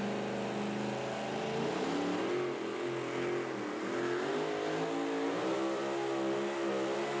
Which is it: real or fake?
real